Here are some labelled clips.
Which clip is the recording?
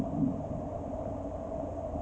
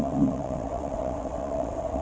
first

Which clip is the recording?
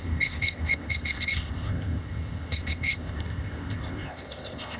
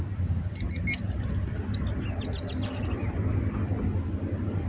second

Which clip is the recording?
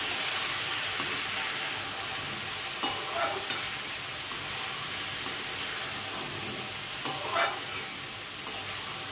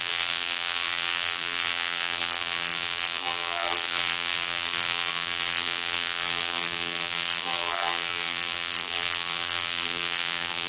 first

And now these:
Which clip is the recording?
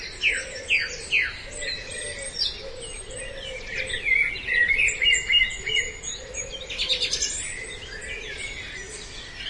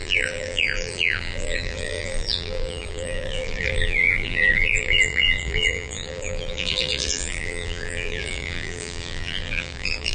first